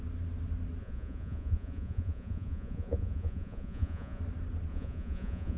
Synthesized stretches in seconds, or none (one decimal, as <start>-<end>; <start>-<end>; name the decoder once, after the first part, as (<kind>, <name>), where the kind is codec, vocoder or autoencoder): 0.8-4.2 (vocoder, Vocos); 4.7-5.6